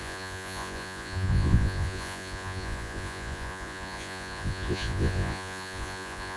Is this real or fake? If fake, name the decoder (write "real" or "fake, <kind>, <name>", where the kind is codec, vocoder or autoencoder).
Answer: fake, vocoder, Vocos